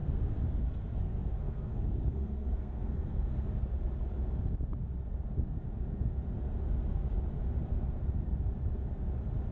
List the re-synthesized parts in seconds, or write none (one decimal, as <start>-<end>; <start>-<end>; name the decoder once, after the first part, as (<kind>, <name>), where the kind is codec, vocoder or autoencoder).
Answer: 0.0-3.5 (codec, SNAC)